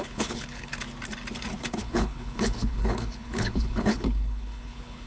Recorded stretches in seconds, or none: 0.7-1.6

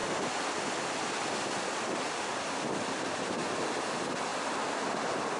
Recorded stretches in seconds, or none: 0.0-5.4

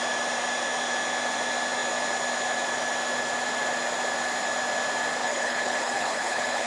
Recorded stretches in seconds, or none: 0.0-5.2

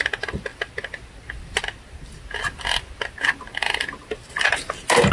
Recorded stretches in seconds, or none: 0.0-5.1

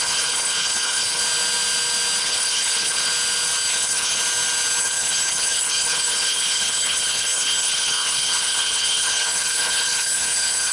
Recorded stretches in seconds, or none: 1.2-2.2; 3.1-3.7; 4.2-4.8